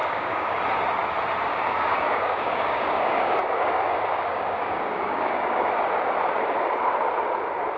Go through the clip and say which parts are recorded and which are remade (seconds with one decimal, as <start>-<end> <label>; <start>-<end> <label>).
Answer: 0.0-0.6 remade; 0.6-1.5 recorded; 1.5-5.7 remade; 5.7-7.8 recorded